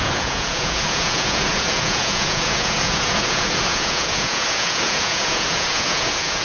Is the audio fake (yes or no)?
yes